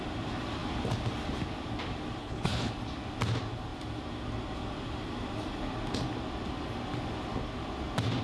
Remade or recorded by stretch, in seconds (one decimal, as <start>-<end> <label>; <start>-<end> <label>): 0.0-2.2 recorded; 2.2-2.7 remade; 2.7-8.2 recorded